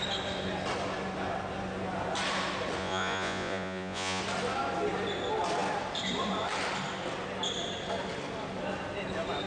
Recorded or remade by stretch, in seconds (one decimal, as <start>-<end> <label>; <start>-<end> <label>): 0.0-2.8 recorded; 2.8-4.2 remade; 4.2-9.5 recorded